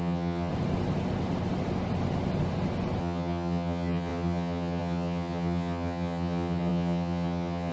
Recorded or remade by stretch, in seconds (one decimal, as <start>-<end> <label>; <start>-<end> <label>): 0.0-0.5 remade; 0.5-3.0 recorded; 3.0-7.7 remade